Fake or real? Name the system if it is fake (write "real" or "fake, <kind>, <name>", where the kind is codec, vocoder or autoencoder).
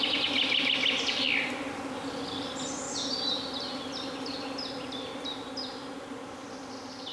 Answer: real